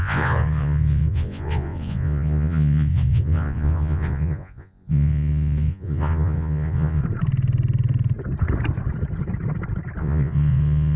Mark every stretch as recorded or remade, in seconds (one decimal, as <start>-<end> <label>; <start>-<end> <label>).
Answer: 0.0-7.0 remade; 7.0-10.0 recorded; 10.0-11.0 remade